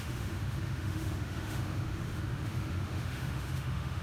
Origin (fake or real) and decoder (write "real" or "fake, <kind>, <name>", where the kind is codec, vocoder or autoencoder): fake, autoencoder, DAC-VAE